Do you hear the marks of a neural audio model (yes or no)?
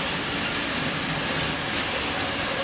no